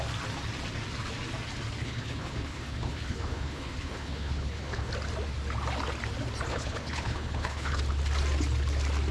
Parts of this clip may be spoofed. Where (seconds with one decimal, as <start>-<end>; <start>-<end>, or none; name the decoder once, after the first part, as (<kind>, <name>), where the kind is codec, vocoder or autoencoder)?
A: 1.8-4.9 (codec, HILCodec); 6.5-7.8